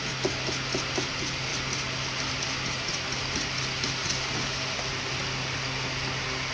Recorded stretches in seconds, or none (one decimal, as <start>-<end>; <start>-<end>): 0.0-6.5